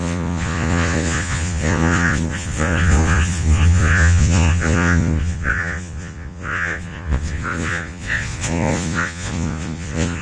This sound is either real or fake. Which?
fake